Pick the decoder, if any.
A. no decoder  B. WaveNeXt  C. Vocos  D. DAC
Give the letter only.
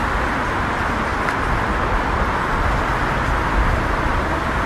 A